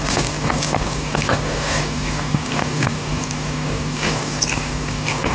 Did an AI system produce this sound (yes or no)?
yes